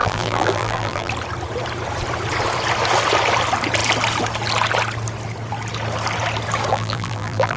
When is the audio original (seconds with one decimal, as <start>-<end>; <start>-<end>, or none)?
1.1-6.7